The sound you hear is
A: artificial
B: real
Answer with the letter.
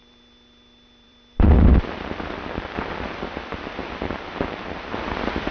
A